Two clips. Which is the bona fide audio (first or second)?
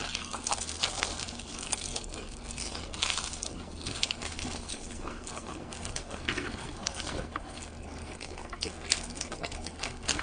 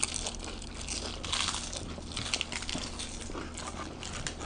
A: second